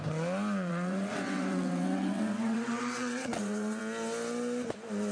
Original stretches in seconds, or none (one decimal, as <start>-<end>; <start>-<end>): 0.0-0.7; 3.8-5.1

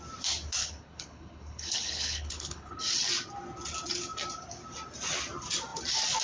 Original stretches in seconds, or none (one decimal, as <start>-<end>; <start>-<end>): 0.0-0.6; 2.8-6.2

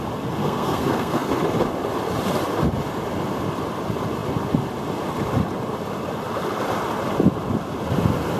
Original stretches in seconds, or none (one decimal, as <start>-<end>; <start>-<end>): 0.0-0.4; 1.3-8.4

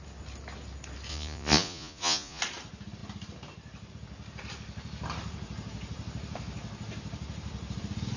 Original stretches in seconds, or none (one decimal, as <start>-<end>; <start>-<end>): 0.0-1.1; 2.4-8.2

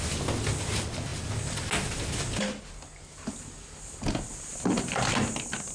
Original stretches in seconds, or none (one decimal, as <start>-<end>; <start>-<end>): 0.0-5.7